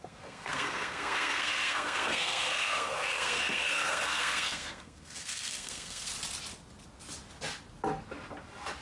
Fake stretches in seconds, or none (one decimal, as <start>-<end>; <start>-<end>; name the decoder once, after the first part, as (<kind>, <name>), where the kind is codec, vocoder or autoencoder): 0.0-6.1 (codec, SNAC)